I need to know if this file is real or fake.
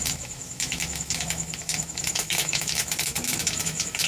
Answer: fake